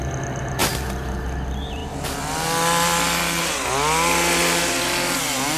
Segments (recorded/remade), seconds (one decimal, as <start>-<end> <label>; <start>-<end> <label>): 0.0-5.6 recorded